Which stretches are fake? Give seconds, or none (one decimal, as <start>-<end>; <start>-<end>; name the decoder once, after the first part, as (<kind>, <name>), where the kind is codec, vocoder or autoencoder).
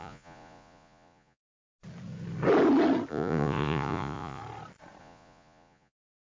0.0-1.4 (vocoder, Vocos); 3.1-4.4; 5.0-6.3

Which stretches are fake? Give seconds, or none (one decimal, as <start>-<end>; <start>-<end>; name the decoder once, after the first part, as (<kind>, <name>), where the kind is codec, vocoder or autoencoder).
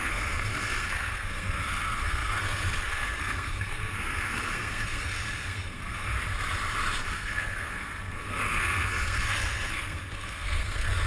0.0-6.1 (codec, SNAC); 7.1-11.1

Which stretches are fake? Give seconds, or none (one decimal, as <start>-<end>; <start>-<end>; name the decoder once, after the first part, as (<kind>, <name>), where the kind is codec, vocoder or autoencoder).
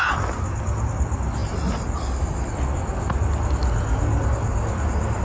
none